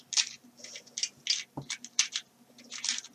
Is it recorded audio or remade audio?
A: recorded